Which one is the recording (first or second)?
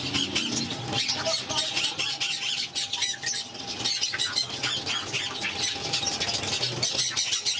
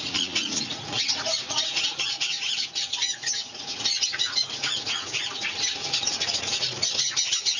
first